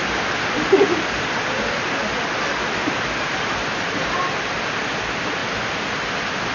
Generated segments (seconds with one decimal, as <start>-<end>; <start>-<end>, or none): 0.0-1.5; 5.4-6.5